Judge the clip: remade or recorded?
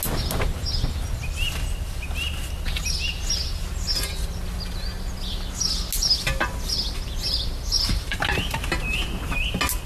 recorded